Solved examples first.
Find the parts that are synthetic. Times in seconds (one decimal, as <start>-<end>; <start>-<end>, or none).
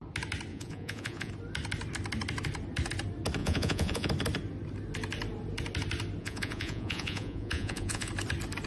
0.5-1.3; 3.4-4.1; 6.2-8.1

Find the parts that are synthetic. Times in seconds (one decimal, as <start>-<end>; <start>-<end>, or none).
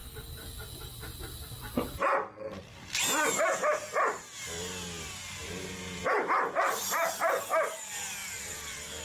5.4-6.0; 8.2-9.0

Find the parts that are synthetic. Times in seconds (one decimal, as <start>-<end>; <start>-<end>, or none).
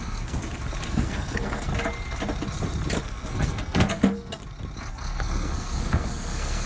0.0-0.4; 0.9-1.7; 3.0-4.4; 4.9-6.7